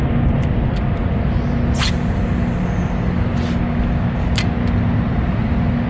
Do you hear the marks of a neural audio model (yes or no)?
no